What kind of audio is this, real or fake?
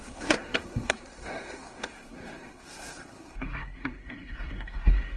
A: fake